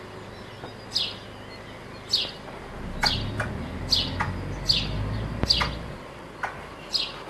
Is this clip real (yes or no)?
yes